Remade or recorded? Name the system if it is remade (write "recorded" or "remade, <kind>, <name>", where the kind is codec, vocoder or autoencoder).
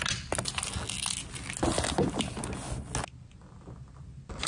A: recorded